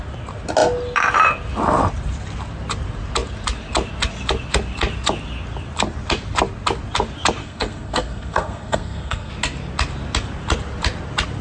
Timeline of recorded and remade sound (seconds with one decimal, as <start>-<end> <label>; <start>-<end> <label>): 0.0-7.4 recorded; 7.4-9.3 remade; 9.3-11.4 recorded

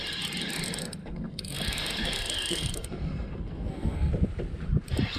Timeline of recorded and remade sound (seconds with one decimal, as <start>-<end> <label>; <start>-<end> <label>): 0.0-1.0 recorded; 1.0-4.1 remade; 4.1-5.2 recorded

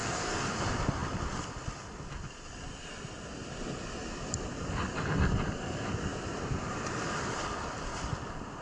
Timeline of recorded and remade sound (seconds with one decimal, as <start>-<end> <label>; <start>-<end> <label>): 0.0-0.5 remade; 0.5-8.6 recorded

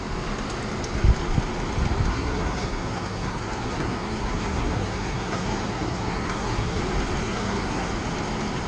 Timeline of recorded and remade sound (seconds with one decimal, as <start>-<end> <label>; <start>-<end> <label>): 0.0-2.1 recorded; 2.1-6.8 remade; 6.8-7.2 recorded; 7.2-7.9 remade; 7.9-8.7 recorded

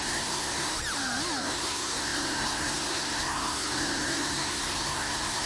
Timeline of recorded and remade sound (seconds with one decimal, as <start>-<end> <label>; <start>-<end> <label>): 0.0-0.7 remade; 0.7-1.4 recorded; 1.4-5.5 remade

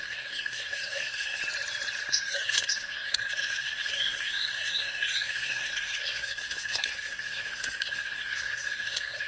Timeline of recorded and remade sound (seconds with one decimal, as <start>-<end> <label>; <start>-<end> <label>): 0.0-1.4 remade; 1.4-2.1 recorded; 2.1-9.3 remade

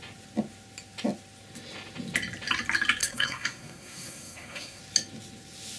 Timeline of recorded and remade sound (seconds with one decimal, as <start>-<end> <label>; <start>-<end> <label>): 0.0-3.0 recorded; 3.0-4.8 remade; 4.8-5.8 recorded

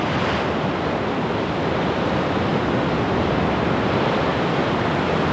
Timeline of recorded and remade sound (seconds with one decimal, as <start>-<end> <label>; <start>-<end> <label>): 0.0-5.3 recorded